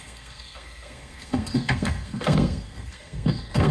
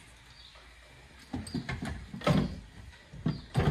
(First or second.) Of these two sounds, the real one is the second